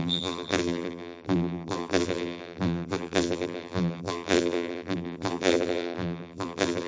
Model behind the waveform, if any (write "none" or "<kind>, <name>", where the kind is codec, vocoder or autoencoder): vocoder, BigVGAN v2